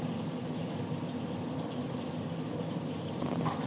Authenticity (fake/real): real